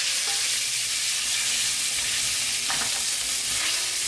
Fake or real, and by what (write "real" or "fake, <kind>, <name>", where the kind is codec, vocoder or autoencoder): real